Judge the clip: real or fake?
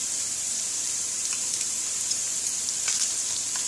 fake